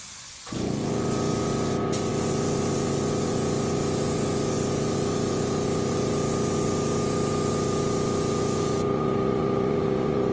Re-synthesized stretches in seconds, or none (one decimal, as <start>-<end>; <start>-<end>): 0.0-10.3